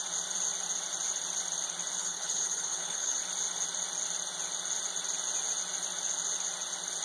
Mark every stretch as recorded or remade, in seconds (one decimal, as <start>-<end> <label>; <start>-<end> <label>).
0.0-2.0 recorded; 2.0-3.2 remade; 3.2-7.0 recorded